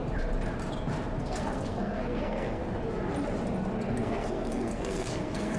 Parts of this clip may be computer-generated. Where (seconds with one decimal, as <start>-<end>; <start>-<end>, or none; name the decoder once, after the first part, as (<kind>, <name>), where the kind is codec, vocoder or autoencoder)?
1.2-2.6 (codec, SNAC); 3.9-5.6